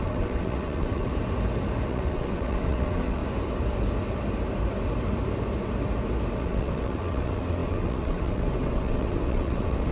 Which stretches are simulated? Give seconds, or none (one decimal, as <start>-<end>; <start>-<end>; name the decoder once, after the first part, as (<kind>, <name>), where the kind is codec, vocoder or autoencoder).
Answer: 0.0-1.1 (vocoder, WaveNeXt); 1.9-3.2; 6.4-9.9